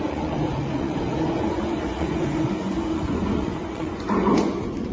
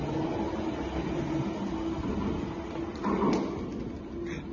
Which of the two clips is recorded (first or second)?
second